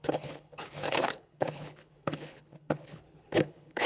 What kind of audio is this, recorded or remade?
remade